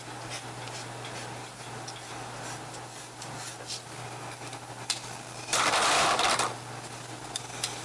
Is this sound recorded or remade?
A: recorded